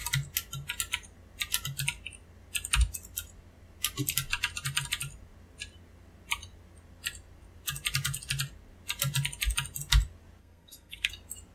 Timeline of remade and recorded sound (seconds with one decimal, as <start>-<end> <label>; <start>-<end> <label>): 0.0-10.4 recorded; 10.4-11.1 remade; 11.1-11.5 recorded